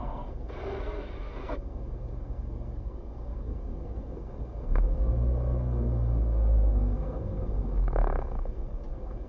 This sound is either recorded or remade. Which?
remade